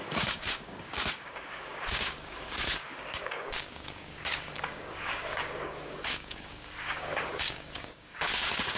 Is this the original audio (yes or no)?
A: no